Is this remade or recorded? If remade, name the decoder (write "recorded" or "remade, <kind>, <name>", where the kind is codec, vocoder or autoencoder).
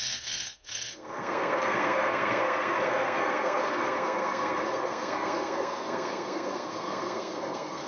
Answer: remade, codec, SNAC